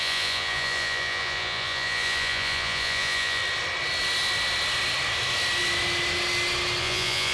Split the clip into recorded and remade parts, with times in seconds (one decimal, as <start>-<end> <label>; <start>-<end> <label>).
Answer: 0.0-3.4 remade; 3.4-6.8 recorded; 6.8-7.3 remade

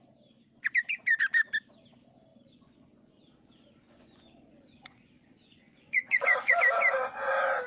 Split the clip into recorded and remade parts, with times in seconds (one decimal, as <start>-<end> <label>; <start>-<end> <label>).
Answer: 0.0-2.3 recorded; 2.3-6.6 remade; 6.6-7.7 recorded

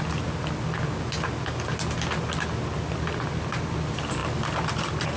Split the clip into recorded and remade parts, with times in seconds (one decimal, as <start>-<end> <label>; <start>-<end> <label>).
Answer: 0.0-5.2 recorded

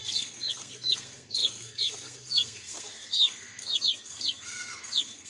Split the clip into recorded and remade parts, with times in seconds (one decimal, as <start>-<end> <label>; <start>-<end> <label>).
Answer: 0.0-5.3 remade

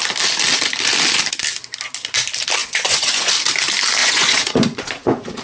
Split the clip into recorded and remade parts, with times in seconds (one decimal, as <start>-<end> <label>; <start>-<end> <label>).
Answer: 0.0-2.6 recorded; 2.6-3.3 remade; 3.3-4.0 recorded; 4.0-5.4 remade

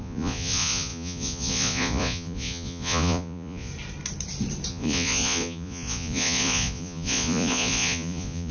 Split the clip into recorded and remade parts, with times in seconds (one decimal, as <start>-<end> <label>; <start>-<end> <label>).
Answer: 0.0-3.7 remade; 3.7-4.7 recorded; 4.7-8.5 remade

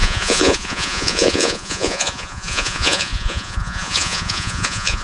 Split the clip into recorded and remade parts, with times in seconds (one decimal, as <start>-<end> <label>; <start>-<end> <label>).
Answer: 0.0-5.0 remade

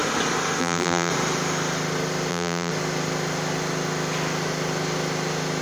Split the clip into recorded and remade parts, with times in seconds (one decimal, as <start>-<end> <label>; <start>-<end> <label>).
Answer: 0.0-0.6 recorded; 0.6-1.1 remade; 1.1-2.3 recorded; 2.3-2.7 remade; 2.7-5.6 recorded